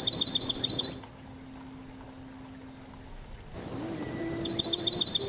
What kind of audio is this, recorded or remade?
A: recorded